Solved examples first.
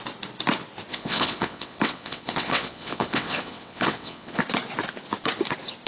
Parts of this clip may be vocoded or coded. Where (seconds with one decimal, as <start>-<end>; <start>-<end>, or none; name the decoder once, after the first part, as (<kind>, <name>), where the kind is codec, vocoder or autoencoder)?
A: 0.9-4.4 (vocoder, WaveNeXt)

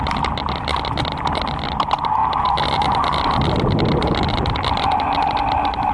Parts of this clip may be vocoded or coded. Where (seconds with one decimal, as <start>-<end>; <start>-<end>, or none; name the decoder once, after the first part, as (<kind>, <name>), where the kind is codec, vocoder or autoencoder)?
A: none

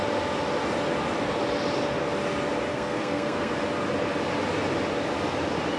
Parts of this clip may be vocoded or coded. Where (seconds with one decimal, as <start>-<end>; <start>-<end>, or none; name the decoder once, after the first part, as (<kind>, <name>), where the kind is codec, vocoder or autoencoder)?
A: 2.7-3.5 (codec, SNAC)

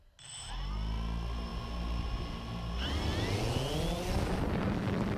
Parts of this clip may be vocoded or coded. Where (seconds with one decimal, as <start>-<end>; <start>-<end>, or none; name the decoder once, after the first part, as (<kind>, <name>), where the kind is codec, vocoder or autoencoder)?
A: none

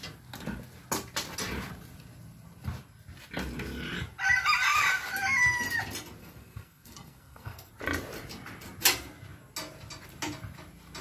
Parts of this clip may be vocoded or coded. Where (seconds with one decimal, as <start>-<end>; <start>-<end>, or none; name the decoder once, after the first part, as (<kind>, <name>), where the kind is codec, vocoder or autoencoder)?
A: 6.2-7.7 (codec, SNAC)

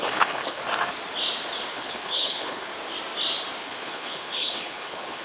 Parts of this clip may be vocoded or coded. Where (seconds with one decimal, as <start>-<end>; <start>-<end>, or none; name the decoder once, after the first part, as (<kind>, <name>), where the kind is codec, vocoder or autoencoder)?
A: 0.0-0.6 (codec, HILCodec); 1.7-2.7; 3.6-5.2

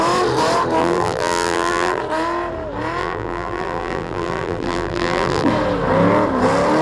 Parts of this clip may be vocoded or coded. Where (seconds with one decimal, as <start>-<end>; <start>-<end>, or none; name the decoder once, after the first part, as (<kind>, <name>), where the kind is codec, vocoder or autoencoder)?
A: 0.8-2.0 (vocoder, BigVGAN v2); 3.0-5.5